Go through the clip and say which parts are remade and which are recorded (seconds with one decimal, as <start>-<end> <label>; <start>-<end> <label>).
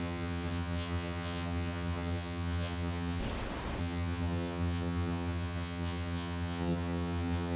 0.0-3.2 remade; 3.2-3.8 recorded; 3.8-7.6 remade